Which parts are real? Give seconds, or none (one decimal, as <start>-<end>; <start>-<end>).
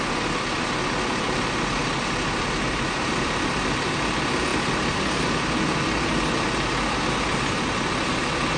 0.0-8.6